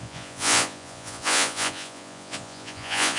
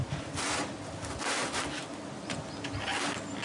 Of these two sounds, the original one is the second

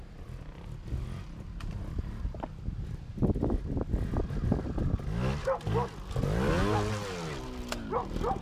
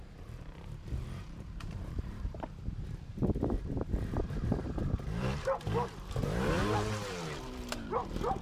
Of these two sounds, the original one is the first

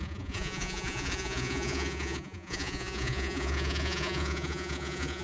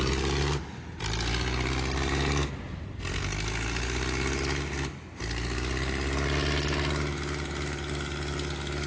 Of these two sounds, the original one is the second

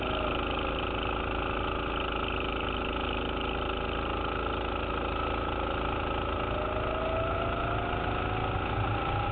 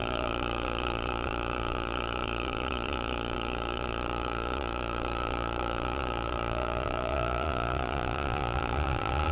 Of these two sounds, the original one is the first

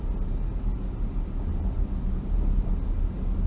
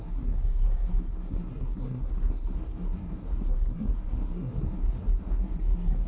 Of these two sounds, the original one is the first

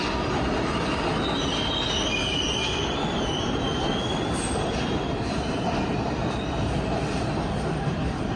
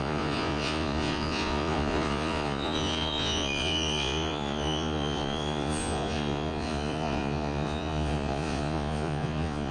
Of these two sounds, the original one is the first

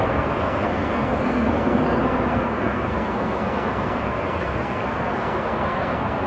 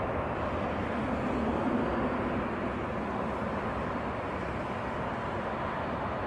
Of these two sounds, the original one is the second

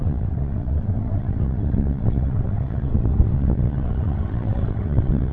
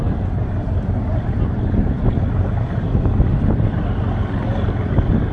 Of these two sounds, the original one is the second